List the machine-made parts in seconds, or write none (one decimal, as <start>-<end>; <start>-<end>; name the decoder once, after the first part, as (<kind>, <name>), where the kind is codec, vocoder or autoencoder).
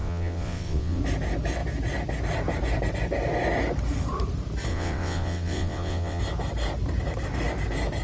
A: 0.0-1.0 (vocoder, WaveNeXt); 4.7-6.2